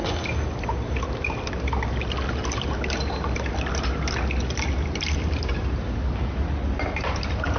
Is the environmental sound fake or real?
real